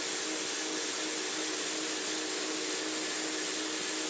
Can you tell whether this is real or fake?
real